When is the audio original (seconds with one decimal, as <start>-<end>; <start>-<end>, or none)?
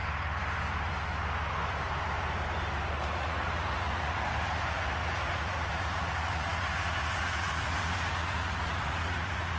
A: 0.0-2.9